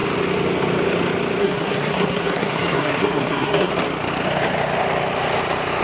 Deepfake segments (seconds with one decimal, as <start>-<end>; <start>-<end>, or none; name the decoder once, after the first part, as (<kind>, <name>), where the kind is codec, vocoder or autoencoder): 1.4-3.7 (codec, SNAC)